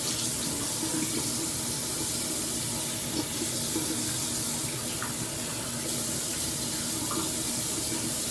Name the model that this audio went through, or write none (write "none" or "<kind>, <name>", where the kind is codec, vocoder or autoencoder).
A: none